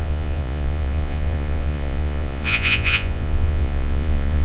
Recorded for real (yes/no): no